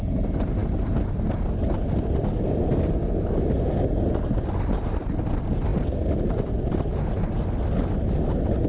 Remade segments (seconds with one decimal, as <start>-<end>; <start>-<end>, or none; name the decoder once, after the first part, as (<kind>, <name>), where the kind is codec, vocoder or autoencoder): none